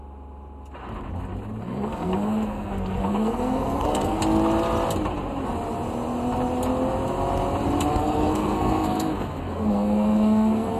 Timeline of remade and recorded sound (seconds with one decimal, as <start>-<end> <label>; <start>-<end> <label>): 0.0-1.6 recorded; 1.6-4.2 remade; 4.2-7.9 recorded; 7.9-10.8 remade